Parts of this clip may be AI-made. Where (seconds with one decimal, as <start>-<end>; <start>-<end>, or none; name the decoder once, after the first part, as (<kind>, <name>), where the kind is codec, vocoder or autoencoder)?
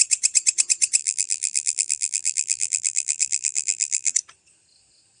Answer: 1.0-4.1 (vocoder, BigVGAN v2)